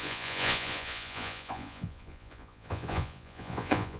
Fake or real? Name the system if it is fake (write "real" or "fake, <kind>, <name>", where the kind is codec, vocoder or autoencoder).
fake, vocoder, Vocos